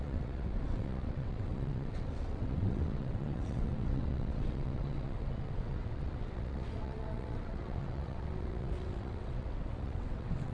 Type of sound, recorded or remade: remade